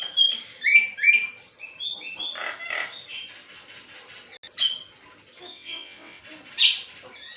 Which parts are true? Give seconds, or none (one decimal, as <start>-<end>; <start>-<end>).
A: 0.0-5.5; 6.2-7.4